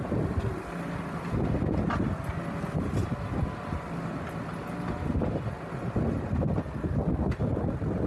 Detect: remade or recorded recorded